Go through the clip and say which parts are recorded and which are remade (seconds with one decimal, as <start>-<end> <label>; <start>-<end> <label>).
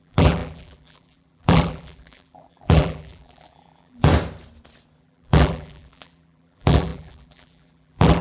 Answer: 0.0-4.1 remade; 4.1-5.0 recorded; 5.0-8.2 remade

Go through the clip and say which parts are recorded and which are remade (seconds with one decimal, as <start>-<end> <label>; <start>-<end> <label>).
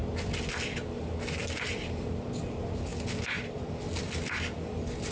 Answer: 0.0-5.1 recorded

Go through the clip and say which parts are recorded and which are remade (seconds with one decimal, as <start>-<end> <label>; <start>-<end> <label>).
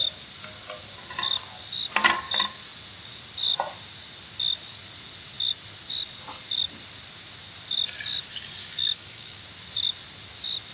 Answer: 0.0-8.6 recorded; 8.6-9.4 remade; 9.4-10.7 recorded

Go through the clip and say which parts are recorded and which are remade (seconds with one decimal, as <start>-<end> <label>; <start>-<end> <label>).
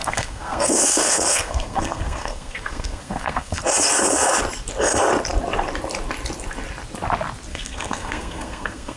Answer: 0.0-3.6 remade; 3.6-7.5 recorded; 7.5-9.0 remade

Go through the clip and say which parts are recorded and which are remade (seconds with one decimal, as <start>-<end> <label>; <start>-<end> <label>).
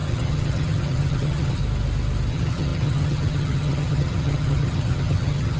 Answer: 0.0-1.6 remade; 1.6-2.3 recorded; 2.3-5.6 remade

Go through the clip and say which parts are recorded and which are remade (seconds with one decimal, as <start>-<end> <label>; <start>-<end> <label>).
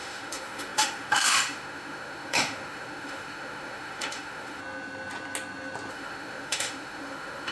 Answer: 0.0-4.6 remade; 4.6-5.9 recorded; 5.9-7.5 remade